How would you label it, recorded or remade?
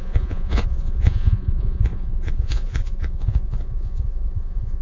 remade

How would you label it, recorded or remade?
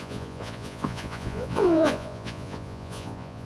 remade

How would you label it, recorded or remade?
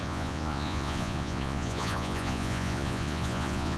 remade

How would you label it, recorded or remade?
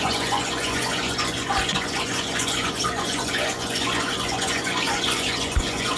remade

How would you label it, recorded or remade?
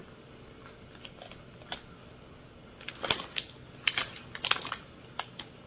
recorded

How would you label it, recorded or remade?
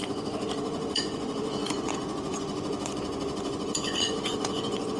remade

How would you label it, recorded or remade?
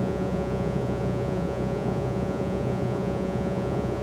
remade